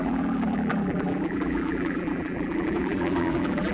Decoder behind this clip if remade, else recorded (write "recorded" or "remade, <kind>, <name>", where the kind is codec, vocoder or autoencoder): remade, vocoder, BigVGAN v2